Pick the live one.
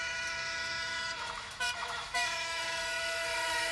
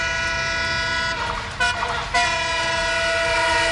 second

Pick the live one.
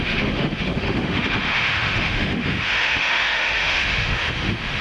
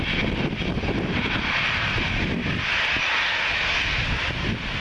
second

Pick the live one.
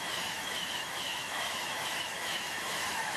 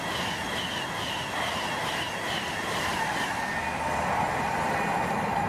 second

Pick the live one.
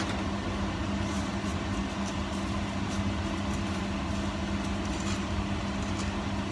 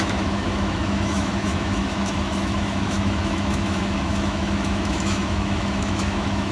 first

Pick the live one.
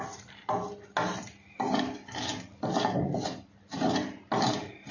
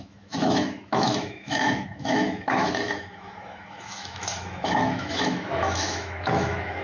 first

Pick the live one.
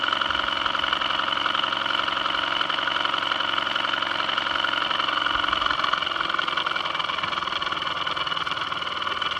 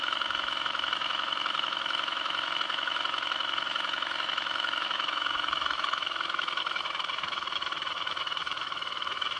first